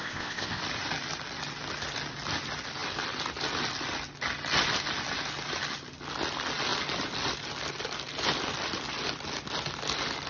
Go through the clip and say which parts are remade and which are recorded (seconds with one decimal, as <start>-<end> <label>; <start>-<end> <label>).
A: 0.0-0.6 remade; 0.6-10.3 recorded